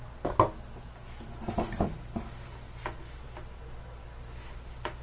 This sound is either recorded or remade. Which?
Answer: recorded